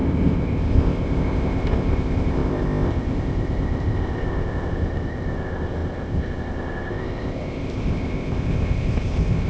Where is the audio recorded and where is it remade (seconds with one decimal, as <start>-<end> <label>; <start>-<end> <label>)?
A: 0.0-9.5 remade